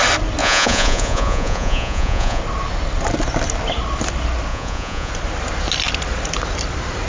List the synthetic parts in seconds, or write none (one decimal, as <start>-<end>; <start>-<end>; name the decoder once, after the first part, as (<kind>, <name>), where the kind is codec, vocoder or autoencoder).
0.4-2.4 (vocoder, Vocos); 4.5-5.1